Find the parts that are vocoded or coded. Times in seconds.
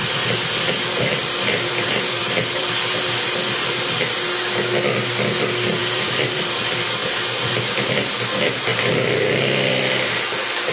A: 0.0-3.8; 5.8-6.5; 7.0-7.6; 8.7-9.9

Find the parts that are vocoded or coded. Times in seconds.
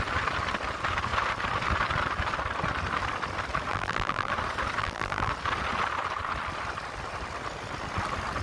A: 3.7-4.3; 4.8-5.3